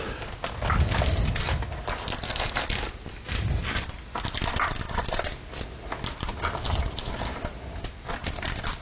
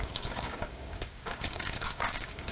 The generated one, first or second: second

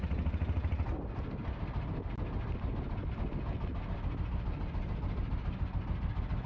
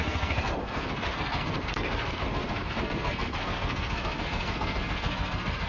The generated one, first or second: second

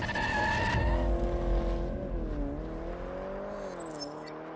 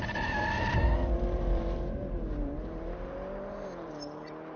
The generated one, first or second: second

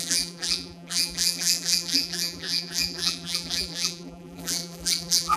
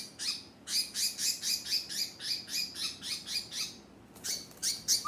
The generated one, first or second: first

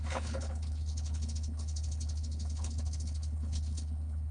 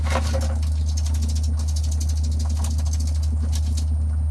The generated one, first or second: first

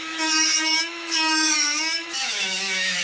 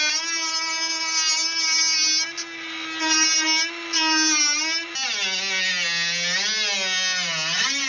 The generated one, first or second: first